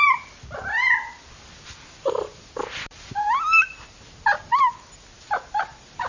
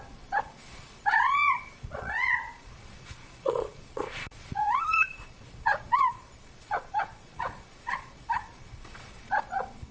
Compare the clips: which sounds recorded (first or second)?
first